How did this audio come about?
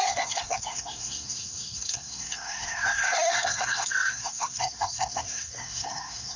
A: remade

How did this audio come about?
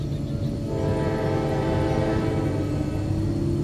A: recorded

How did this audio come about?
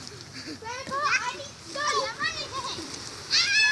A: recorded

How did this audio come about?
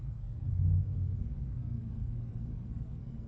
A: remade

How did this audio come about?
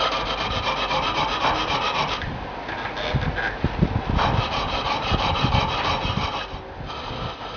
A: recorded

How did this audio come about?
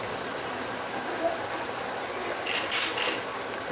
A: recorded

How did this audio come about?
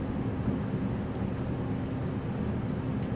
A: recorded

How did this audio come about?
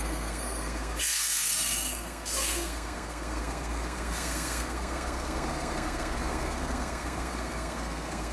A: remade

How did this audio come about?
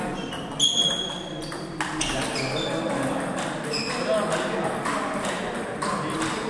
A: recorded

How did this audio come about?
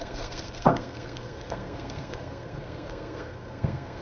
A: remade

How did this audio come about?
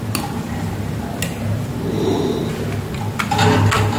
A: recorded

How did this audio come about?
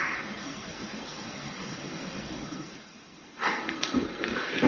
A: remade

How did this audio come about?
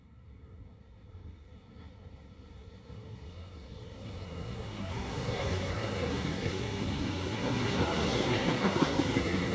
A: remade